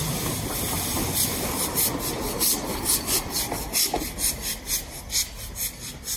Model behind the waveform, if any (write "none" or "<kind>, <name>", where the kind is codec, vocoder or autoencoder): none